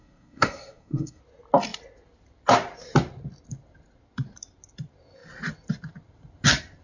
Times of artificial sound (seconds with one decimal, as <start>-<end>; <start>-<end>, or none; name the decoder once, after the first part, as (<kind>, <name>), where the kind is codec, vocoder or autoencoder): 0.0-1.2 (codec, SNAC)